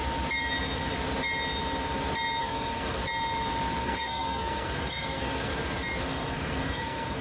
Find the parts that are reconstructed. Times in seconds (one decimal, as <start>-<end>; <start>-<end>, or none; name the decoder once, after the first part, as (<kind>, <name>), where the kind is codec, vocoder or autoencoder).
2.4-3.0 (codec, SNAC); 3.8-5.5; 6.0-7.2